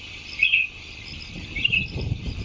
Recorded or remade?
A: recorded